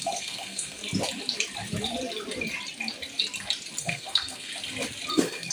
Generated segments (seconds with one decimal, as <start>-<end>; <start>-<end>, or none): 0.0-0.8; 3.8-4.5; 5.1-5.5